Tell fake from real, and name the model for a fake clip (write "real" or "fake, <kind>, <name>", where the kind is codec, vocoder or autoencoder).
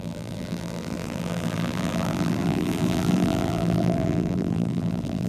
fake, vocoder, BigVGAN v2